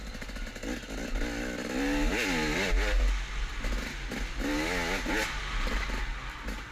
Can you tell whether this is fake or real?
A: real